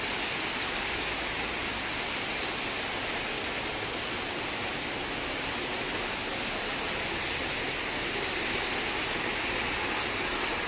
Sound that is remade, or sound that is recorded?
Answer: recorded